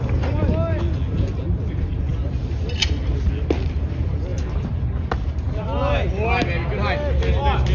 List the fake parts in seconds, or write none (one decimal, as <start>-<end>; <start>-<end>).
none

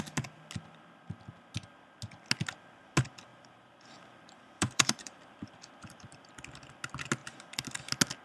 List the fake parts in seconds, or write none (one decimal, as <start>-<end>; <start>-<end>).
3.3-6.3

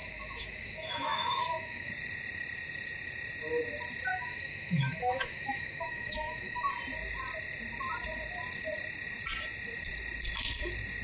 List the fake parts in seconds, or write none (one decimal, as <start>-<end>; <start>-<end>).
0.0-1.9; 4.1-6.7

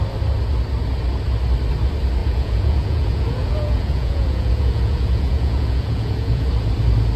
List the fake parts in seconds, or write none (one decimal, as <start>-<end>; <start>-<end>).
2.2-6.5

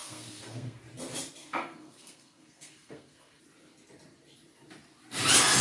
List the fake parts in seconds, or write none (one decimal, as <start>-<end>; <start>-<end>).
0.0-0.8; 1.4-3.4

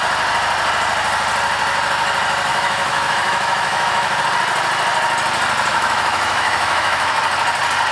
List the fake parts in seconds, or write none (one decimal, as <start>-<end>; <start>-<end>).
2.5-4.2; 5.7-7.2

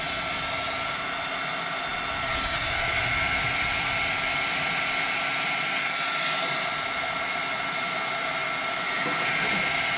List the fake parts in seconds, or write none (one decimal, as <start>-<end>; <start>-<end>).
0.0-1.9; 3.5-10.0

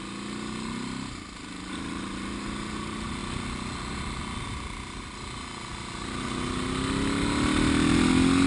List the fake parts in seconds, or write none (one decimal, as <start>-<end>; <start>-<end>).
none